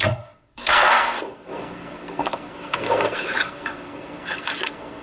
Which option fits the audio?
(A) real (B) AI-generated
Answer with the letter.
B